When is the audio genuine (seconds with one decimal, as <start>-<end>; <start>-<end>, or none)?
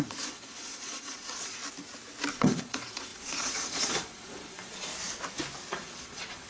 1.6-2.3; 4.9-5.7